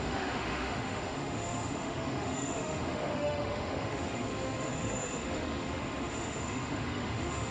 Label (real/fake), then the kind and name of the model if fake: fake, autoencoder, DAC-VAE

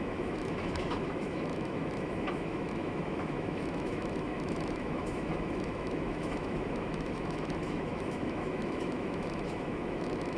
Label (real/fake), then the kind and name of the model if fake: fake, autoencoder, DAC-VAE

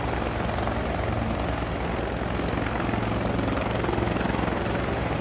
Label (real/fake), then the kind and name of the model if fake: real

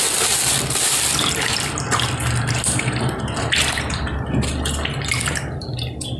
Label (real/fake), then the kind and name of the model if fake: real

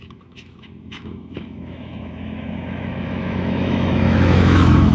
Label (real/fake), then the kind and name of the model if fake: fake, autoencoder, DAC-VAE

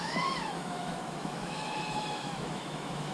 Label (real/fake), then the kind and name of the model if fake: fake, autoencoder, DAC-VAE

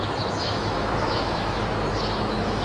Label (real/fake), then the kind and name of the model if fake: fake, autoencoder, DAC-VAE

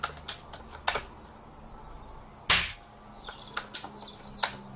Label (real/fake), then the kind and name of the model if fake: real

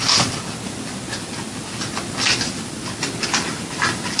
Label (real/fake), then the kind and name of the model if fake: real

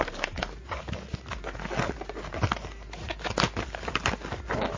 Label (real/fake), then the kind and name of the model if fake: real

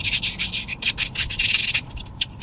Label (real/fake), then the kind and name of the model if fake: real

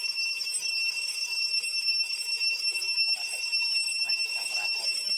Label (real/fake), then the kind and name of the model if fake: fake, autoencoder, DAC-VAE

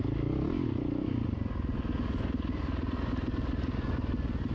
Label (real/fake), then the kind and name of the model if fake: real